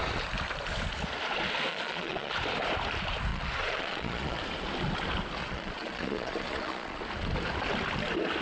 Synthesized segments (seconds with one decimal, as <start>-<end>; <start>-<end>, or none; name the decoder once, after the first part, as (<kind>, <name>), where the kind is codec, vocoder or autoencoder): 1.7-2.3 (vocoder, Vocos); 3.3-4.4; 5.4-7.0